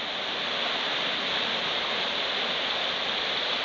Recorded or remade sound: recorded